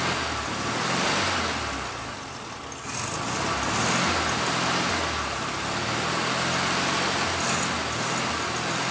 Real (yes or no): yes